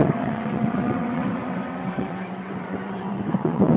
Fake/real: fake